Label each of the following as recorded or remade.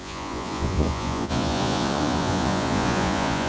remade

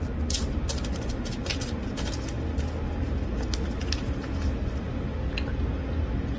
recorded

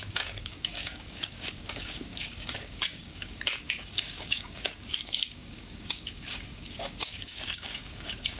remade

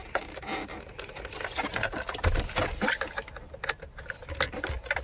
recorded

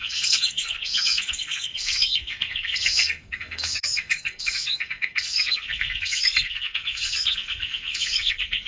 remade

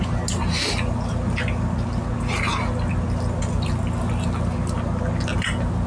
recorded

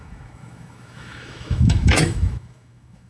remade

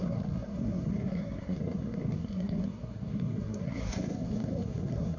remade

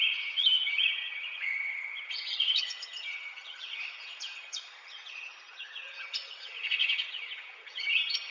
remade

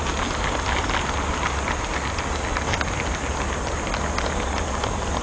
recorded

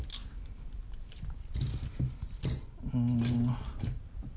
recorded